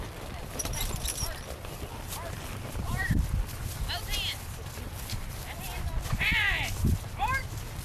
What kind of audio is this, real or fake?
fake